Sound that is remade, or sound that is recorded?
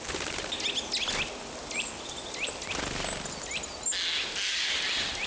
recorded